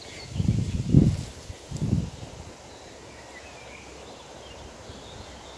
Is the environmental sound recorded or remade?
recorded